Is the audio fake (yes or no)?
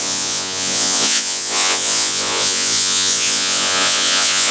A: yes